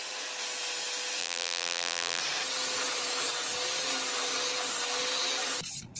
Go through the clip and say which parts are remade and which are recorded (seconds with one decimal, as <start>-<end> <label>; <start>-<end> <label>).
0.0-1.2 recorded; 1.2-2.2 remade; 2.2-6.0 recorded

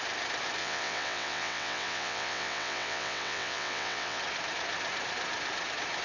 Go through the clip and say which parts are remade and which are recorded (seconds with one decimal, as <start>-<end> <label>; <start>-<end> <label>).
0.0-0.6 recorded; 0.6-4.2 remade; 4.2-6.0 recorded